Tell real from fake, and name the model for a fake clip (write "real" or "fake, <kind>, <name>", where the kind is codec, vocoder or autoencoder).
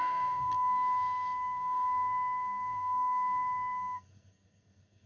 fake, codec, SNAC